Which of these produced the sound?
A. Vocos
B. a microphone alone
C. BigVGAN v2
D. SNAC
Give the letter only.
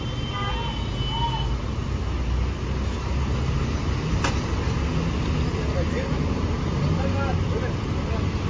B